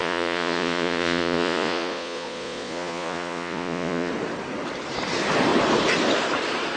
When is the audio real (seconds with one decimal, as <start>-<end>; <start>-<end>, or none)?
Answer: 4.1-6.8